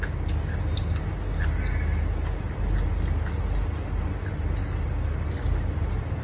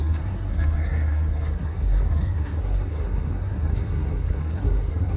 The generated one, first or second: second